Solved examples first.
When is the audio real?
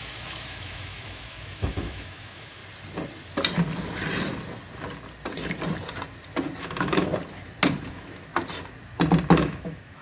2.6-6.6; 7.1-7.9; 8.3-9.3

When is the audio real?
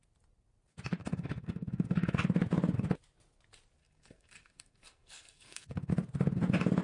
0.0-1.0; 2.2-3.8; 5.9-6.8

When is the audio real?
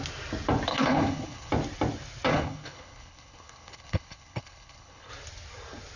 0.0-0.7; 1.5-2.3; 5.1-6.0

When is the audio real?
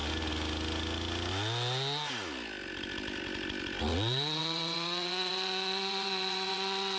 0.0-3.8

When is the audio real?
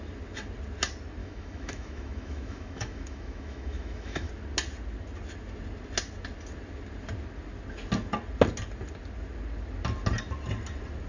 0.0-1.2; 4.3-11.1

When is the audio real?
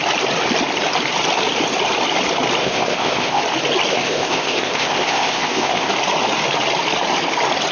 0.0-2.6; 3.4-3.9; 5.9-7.7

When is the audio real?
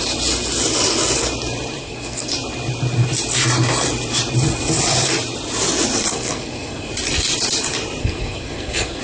0.0-1.8; 2.3-6.1; 6.9-8.0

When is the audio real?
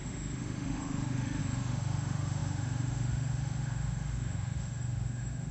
none